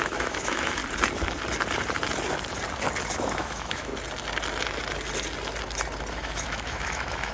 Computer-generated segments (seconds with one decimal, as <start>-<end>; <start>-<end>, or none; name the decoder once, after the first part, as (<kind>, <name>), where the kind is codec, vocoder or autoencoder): 0.0-0.8 (autoencoder, DAC-VAE); 3.1-3.9; 6.1-7.3